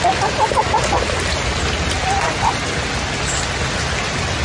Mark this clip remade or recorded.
recorded